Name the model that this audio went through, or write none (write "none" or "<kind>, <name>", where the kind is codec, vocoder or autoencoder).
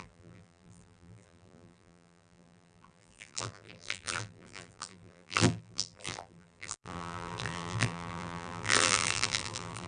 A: vocoder, BigVGAN v2